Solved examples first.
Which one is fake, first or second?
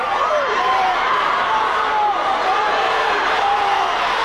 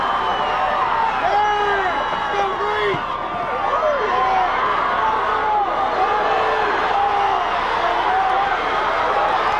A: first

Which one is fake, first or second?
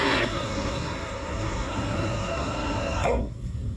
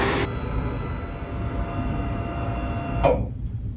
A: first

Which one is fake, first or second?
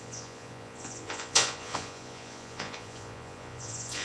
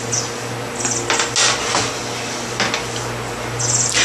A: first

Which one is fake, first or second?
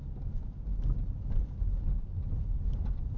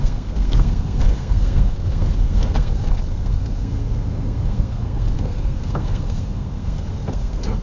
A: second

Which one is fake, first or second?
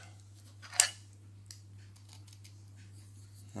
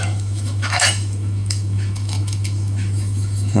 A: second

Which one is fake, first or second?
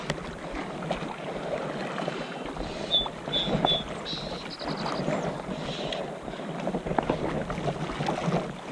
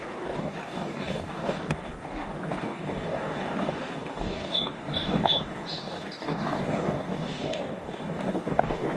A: second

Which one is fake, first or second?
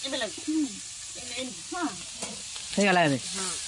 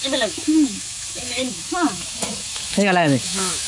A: second